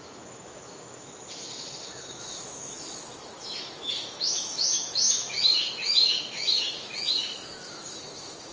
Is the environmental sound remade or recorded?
remade